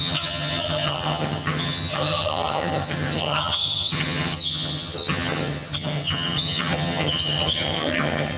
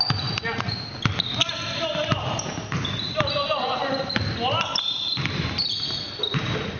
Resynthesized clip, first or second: first